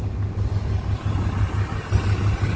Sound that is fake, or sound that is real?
real